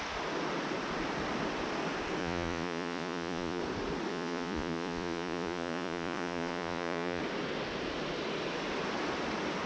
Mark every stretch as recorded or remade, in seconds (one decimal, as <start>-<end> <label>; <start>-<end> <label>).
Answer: 0.0-2.2 recorded; 2.2-3.6 remade; 3.6-4.1 recorded; 4.1-7.2 remade; 7.2-9.7 recorded